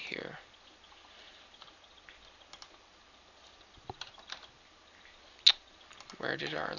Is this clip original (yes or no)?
yes